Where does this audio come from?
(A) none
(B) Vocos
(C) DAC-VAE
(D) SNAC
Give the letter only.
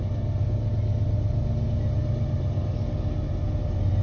A